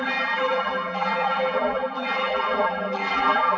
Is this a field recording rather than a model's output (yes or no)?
no